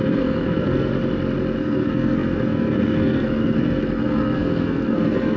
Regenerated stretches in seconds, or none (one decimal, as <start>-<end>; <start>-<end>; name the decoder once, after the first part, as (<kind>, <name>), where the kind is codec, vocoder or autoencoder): 0.0-0.9 (codec, SNAC); 1.6-5.4